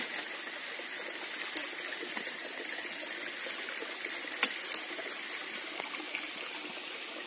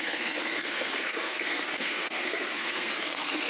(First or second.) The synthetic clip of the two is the second